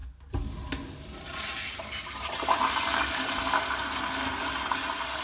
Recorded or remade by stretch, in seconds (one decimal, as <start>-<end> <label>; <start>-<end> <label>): 0.0-5.2 recorded